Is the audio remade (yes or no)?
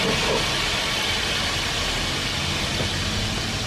no